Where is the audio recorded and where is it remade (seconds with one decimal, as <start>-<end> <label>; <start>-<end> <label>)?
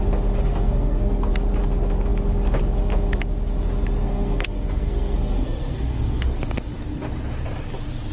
0.0-0.5 recorded; 0.5-1.3 remade; 1.3-4.0 recorded; 4.0-6.4 remade; 6.4-8.1 recorded